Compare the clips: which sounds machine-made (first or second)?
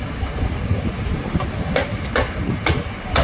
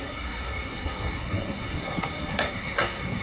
second